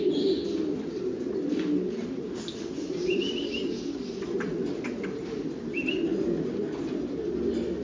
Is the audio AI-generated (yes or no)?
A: no